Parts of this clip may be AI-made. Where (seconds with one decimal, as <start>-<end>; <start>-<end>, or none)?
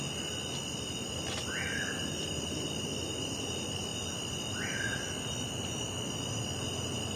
none